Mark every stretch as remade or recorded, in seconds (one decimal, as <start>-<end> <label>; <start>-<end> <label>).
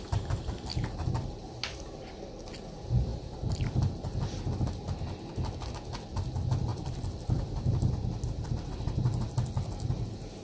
0.0-3.1 recorded; 3.1-3.9 remade; 3.9-6.7 recorded; 6.7-7.8 remade; 7.8-10.4 recorded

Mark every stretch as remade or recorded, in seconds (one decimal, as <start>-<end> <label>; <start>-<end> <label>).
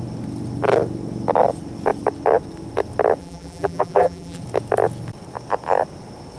0.0-3.2 recorded; 3.2-4.4 remade; 4.4-6.4 recorded